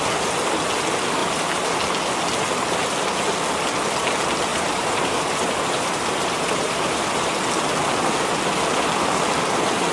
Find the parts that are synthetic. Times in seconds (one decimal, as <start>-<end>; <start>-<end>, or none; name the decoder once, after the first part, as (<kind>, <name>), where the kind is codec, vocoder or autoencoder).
1.2-1.7 (vocoder, BigVGAN v2); 4.5-7.3